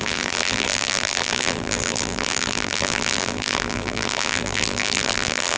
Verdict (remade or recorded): remade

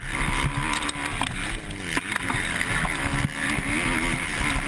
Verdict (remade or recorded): recorded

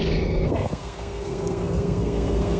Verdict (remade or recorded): remade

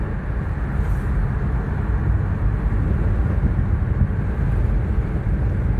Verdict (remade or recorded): recorded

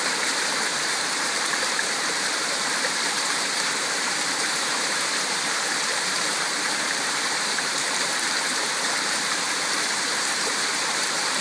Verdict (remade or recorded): remade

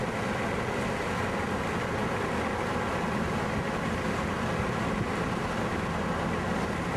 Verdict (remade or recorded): recorded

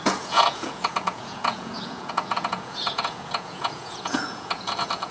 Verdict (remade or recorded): remade